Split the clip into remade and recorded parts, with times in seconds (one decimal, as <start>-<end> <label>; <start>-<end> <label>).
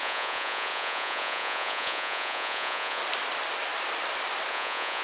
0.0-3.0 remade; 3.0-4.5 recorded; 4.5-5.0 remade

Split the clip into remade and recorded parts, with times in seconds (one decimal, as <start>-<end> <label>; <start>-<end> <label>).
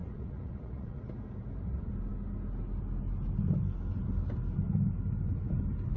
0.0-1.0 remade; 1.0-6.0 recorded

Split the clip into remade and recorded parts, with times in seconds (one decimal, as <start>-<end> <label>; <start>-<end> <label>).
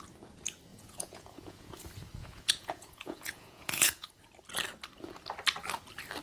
0.0-0.7 recorded; 0.7-1.7 remade; 1.7-2.2 recorded; 2.2-4.1 remade; 4.1-6.2 recorded